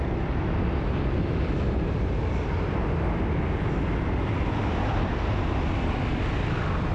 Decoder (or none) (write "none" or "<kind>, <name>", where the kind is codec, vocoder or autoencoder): none